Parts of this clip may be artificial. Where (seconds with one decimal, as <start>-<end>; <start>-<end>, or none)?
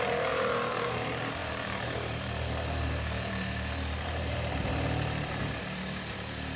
0.0-6.6